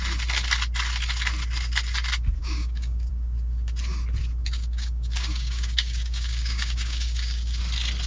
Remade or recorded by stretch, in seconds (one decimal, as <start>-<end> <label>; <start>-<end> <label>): 0.0-2.4 recorded; 2.4-3.1 remade; 3.1-4.4 recorded; 4.4-7.6 remade; 7.6-8.1 recorded